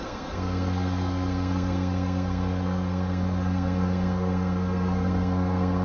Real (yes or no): no